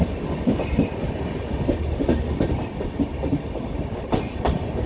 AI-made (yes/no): no